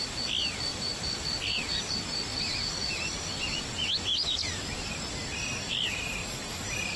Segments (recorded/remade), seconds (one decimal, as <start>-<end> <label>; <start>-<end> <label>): 0.0-2.3 recorded; 2.3-2.9 remade; 2.9-4.1 recorded; 4.1-4.9 remade; 4.9-6.2 recorded; 6.2-7.0 remade